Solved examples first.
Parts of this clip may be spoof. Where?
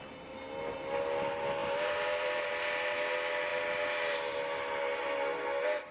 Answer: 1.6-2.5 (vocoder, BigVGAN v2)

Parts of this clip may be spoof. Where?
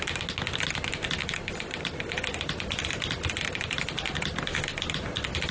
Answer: 1.2-4.5 (vocoder, BigVGAN v2)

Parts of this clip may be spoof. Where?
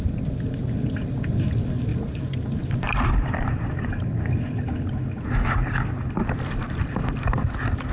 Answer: 1.9-4.0 (vocoder, BigVGAN v2)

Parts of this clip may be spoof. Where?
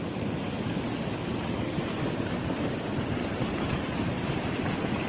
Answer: 1.3-4.4 (vocoder, BigVGAN v2)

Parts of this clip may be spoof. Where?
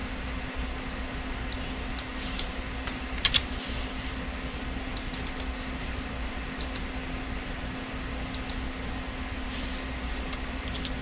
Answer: none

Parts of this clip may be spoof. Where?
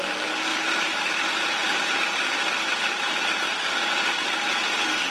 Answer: 0.5-1.0 (vocoder, BigVGAN v2); 1.6-2.3; 2.7-3.4